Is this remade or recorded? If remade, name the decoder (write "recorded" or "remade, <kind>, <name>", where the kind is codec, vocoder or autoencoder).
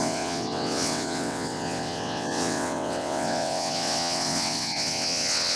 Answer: remade, vocoder, WaveNeXt